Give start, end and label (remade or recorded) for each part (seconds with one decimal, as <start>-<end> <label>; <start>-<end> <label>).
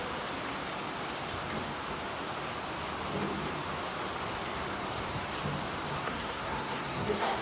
0.0-5.9 recorded; 5.9-7.4 remade